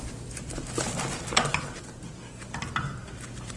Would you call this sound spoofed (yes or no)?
no